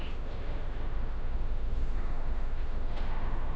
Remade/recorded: remade